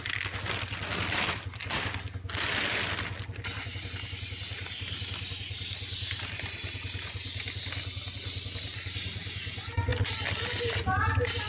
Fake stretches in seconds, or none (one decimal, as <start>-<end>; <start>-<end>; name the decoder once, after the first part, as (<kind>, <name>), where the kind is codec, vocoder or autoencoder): none